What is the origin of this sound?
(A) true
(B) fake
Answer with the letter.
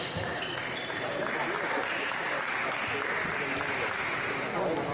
A